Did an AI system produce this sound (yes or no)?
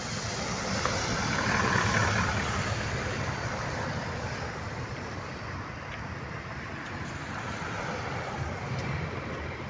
no